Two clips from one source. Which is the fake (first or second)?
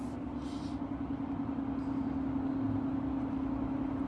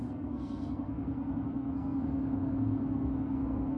second